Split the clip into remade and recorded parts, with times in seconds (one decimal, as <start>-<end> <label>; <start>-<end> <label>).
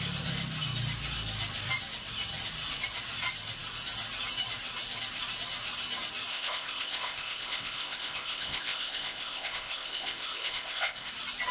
0.0-6.3 recorded; 6.3-11.1 remade; 11.1-11.5 recorded